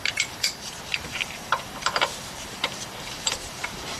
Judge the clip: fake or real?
fake